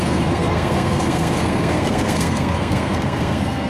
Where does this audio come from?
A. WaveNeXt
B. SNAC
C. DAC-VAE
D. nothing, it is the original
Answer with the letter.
B